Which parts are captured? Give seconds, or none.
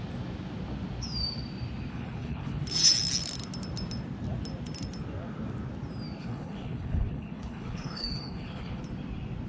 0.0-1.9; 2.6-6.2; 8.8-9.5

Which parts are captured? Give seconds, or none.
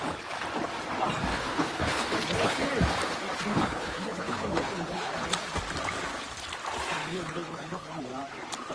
0.0-1.3; 2.7-3.5; 5.1-7.0; 8.0-8.7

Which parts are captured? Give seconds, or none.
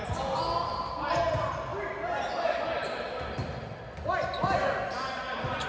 0.0-5.7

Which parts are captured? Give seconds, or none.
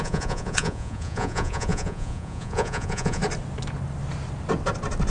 3.2-5.1